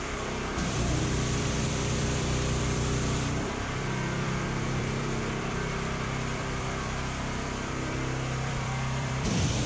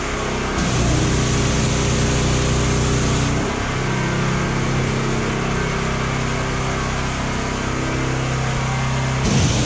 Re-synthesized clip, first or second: first